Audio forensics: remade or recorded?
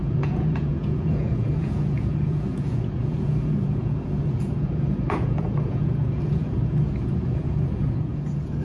remade